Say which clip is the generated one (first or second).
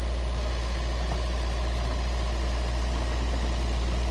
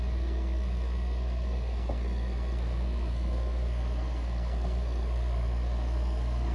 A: second